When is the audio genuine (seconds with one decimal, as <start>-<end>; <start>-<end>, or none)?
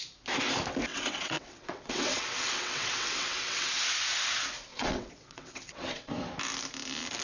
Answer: 0.0-0.9; 3.8-4.7; 6.1-7.2